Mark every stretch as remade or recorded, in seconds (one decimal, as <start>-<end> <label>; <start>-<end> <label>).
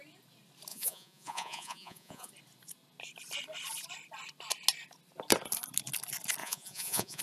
0.0-0.7 recorded; 0.7-2.3 remade; 2.3-6.4 recorded; 6.4-7.2 remade